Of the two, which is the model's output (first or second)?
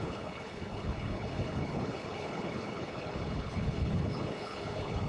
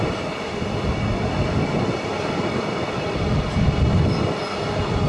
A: first